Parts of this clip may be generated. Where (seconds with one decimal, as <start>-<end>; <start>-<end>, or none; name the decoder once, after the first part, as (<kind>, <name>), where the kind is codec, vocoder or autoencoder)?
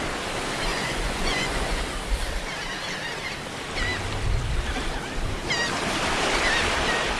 0.7-1.8 (vocoder, Vocos)